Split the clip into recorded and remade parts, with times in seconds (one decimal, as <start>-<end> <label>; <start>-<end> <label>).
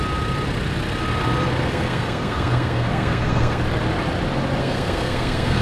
0.0-1.7 recorded; 1.7-3.6 remade; 3.6-4.6 recorded; 4.6-5.6 remade